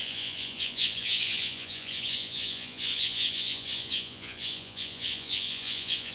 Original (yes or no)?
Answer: no